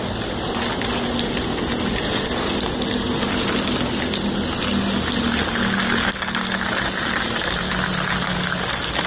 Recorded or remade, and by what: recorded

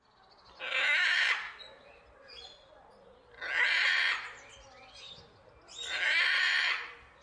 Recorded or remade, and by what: recorded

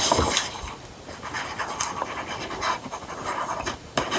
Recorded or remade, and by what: recorded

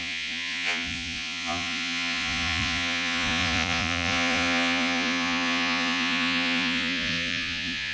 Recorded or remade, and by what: remade, vocoder, Vocos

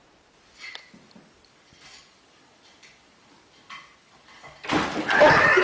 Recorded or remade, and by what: recorded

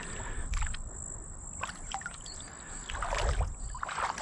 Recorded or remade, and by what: recorded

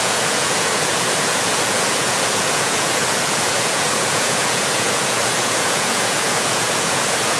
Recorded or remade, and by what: remade, vocoder, Vocos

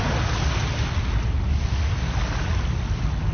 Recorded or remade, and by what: recorded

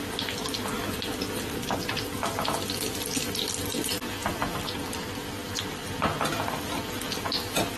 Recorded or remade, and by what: recorded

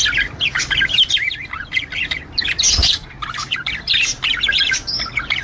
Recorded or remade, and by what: recorded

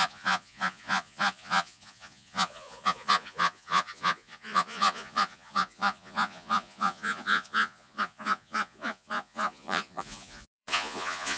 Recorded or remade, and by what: remade, vocoder, Vocos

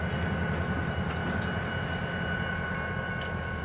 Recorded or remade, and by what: recorded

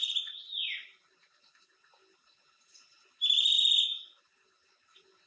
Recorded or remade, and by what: recorded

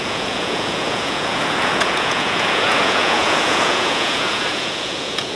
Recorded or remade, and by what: remade, vocoder, Vocos